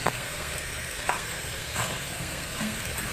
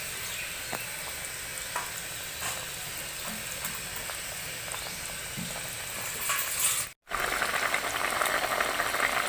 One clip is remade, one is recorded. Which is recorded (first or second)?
second